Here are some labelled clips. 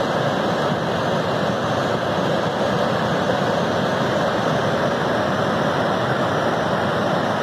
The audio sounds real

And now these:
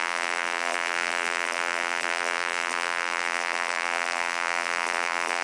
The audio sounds fake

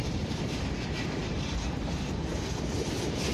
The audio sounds fake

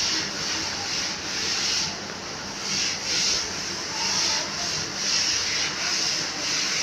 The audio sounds real